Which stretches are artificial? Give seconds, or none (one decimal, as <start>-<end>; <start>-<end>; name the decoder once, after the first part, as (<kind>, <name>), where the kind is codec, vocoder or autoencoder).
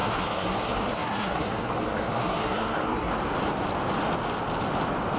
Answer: 0.0-3.1 (codec, SNAC)